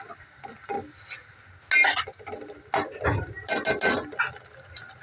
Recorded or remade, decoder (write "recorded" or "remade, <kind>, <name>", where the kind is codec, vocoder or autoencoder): recorded